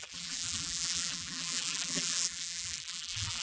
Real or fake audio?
fake